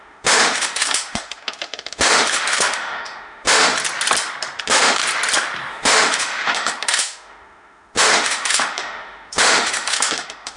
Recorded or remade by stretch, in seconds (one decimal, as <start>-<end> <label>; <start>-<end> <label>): 0.0-3.7 remade; 3.7-4.6 recorded; 4.6-5.0 remade; 5.0-5.7 recorded; 5.7-10.6 remade